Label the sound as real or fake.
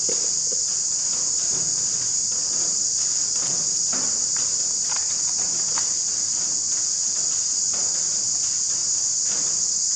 real